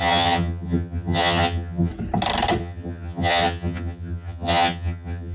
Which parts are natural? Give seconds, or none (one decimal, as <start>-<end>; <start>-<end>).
1.9-2.6